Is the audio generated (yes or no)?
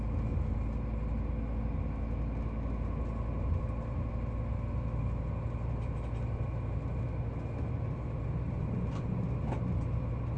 no